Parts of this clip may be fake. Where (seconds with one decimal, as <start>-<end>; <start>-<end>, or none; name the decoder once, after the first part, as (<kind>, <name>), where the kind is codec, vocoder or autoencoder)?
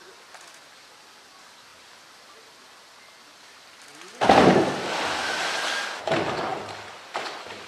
none